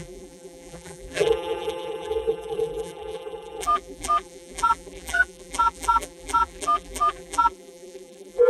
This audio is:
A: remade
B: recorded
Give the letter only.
A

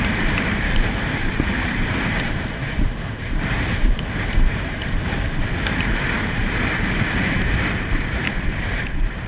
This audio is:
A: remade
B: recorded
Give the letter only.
A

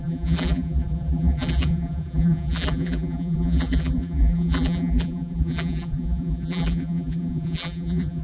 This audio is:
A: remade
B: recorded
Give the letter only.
A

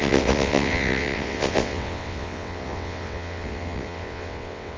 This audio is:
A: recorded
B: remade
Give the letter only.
B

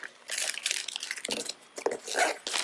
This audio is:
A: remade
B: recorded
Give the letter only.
B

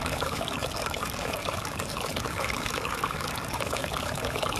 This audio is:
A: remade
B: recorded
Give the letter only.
A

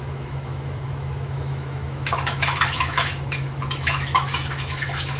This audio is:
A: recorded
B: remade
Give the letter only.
B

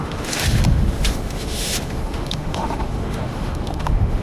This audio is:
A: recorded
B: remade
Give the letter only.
B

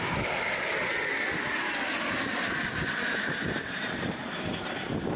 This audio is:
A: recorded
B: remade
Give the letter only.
A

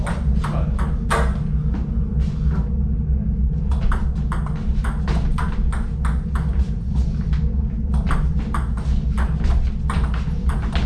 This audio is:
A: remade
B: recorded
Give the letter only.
B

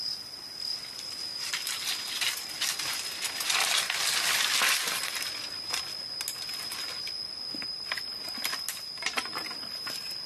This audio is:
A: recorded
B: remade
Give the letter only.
A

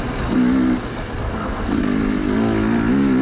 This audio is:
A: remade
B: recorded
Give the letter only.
B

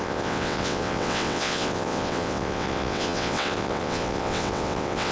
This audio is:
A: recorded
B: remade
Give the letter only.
B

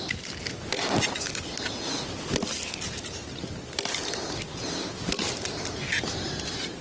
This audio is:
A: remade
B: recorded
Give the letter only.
B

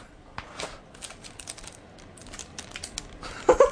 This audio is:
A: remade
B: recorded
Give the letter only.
B